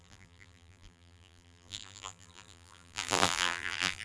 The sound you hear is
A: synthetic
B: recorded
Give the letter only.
A